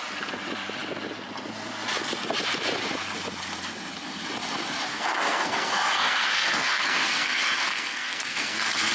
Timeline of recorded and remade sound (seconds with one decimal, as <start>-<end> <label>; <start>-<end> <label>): 0.0-4.9 recorded; 4.9-8.9 remade